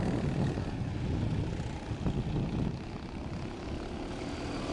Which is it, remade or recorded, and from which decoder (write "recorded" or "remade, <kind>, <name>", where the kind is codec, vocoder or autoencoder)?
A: recorded